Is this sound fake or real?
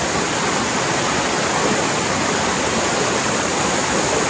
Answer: real